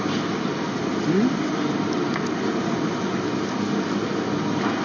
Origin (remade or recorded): recorded